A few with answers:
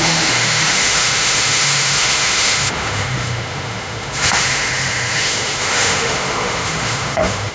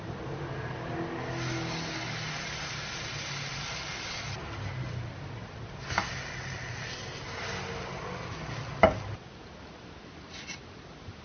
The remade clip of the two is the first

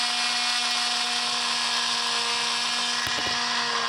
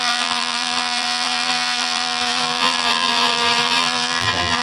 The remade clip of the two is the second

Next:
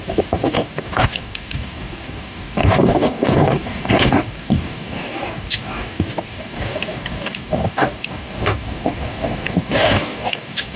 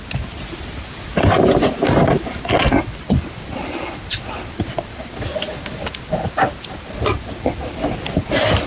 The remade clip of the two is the first